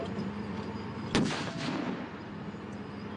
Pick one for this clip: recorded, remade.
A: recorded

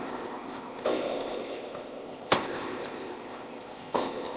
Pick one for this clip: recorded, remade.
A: remade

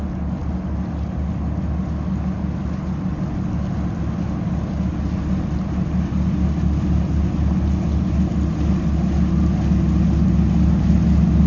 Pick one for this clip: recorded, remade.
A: recorded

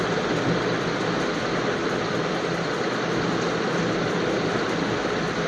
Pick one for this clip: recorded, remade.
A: recorded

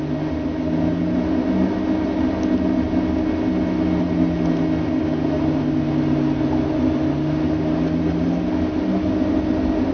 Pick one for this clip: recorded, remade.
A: recorded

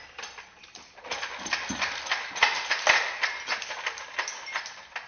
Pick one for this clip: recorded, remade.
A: recorded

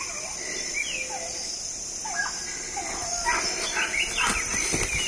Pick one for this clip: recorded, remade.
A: recorded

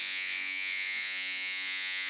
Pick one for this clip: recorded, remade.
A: remade